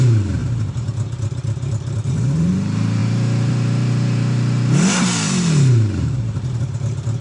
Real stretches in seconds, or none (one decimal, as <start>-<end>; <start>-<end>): none